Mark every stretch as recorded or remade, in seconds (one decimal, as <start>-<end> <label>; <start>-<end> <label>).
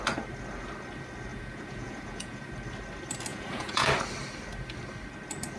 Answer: 0.0-1.3 recorded; 1.3-2.5 remade; 2.5-3.3 recorded; 3.3-3.9 remade; 3.9-5.6 recorded